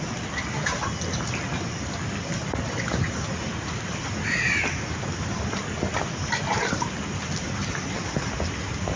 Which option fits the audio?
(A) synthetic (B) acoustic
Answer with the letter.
B